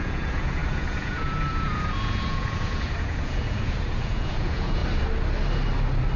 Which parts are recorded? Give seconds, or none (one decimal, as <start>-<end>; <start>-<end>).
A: 4.8-6.2